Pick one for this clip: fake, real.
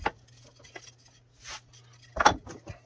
real